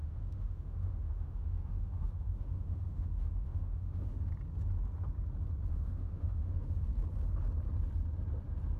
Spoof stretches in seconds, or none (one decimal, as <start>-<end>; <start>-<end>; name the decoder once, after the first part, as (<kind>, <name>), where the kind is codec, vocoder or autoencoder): 0.0-4.3 (autoencoder, DAC-VAE); 5.7-6.9